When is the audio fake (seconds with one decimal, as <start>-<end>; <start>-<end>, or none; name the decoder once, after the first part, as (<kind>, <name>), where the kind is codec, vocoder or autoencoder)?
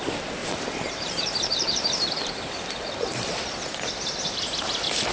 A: 0.4-3.5 (vocoder, BigVGAN v2)